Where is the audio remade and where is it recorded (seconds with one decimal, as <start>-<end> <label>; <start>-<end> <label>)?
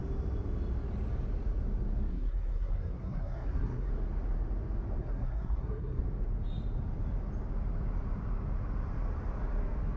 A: 0.0-2.1 recorded; 2.1-3.9 remade; 3.9-5.0 recorded; 5.0-6.0 remade; 6.0-10.0 recorded